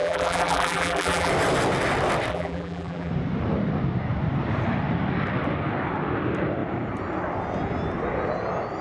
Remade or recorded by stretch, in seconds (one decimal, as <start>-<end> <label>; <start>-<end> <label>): 0.0-1.3 remade; 1.3-2.3 recorded; 2.3-3.1 remade; 3.1-8.8 recorded